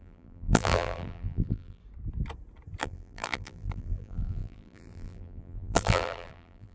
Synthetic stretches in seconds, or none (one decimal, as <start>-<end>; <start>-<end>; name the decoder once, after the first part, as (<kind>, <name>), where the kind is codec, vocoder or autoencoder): 0.0-1.8 (vocoder, BigVGAN v2); 2.8-6.7